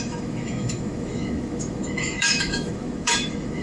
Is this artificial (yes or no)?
yes